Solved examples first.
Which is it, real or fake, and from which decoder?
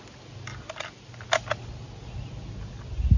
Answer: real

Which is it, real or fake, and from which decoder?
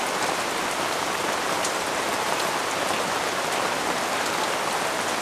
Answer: real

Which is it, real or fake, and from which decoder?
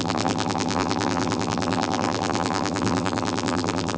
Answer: fake, vocoder, BigVGAN v2